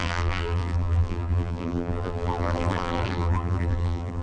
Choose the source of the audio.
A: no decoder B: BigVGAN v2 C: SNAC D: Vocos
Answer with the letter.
B